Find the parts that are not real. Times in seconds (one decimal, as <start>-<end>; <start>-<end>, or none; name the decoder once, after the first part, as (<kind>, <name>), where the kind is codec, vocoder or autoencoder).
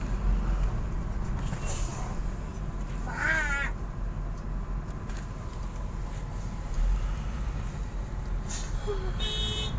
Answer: none